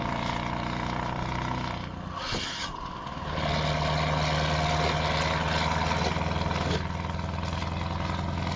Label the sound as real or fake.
real